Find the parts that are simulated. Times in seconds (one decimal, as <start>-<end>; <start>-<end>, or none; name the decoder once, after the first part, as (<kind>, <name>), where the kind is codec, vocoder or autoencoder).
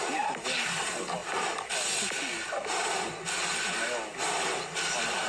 none